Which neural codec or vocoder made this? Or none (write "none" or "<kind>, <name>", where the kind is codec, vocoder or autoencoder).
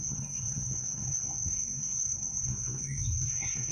codec, SNAC